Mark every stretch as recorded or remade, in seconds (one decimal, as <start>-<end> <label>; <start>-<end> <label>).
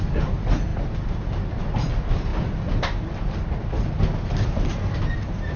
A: 0.0-5.6 recorded